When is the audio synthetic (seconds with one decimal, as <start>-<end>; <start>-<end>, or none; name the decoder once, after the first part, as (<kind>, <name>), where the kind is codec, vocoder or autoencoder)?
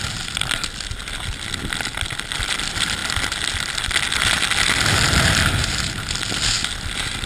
none